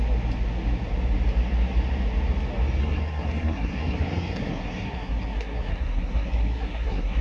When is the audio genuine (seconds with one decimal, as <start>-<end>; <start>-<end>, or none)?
0.0-2.8